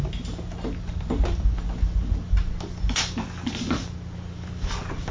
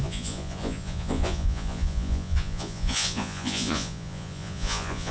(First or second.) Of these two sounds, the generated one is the second